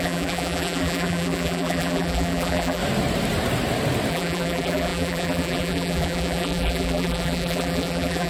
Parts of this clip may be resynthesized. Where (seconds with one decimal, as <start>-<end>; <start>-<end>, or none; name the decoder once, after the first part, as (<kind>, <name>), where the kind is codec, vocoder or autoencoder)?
0.0-2.8 (vocoder, BigVGAN v2); 4.1-8.3